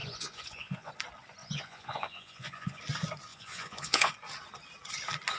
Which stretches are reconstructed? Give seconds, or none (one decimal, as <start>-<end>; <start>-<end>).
0.0-0.9; 1.4-2.8; 3.3-4.1